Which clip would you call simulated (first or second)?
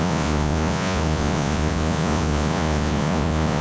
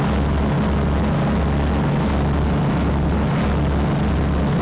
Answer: first